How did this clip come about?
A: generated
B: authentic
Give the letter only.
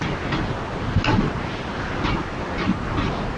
B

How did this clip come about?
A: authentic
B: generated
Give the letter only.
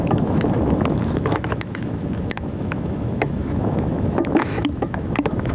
B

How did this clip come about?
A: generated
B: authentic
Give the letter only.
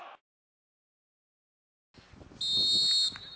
B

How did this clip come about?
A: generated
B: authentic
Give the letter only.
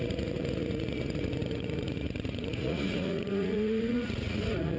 A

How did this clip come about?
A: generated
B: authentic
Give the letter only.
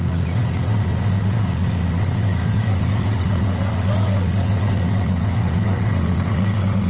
A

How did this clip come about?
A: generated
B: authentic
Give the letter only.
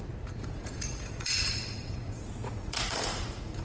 A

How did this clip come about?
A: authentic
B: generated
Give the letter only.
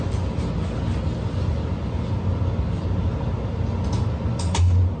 A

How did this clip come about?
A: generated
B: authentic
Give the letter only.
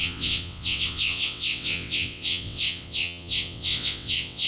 A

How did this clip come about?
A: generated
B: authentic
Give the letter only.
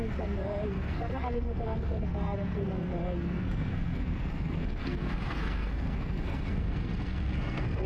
A